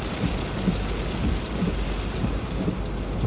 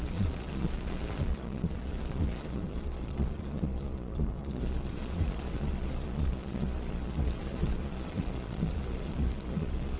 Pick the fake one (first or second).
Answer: second